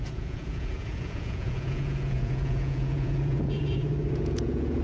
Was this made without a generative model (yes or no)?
no